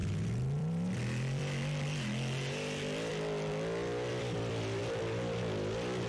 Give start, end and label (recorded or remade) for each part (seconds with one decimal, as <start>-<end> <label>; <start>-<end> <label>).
0.0-3.1 remade; 3.1-4.1 recorded; 4.1-4.8 remade; 4.8-6.1 recorded